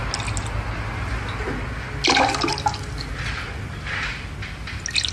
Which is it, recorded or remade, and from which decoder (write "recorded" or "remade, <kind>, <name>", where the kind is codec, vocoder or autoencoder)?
recorded